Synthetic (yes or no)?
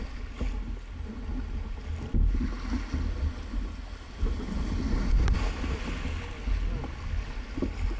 no